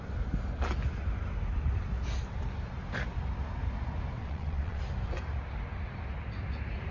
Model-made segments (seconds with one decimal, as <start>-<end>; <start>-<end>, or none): 4.2-4.8